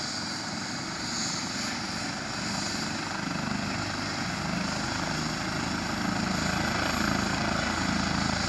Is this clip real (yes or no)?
yes